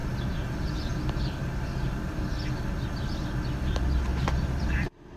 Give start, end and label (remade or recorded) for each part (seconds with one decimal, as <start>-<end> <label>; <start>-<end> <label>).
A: 0.0-4.1 recorded; 4.1-5.2 remade